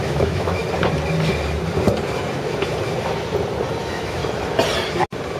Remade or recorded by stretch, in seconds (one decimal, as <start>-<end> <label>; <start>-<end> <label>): 0.0-0.6 remade; 0.6-3.8 recorded; 3.8-4.2 remade; 4.2-5.4 recorded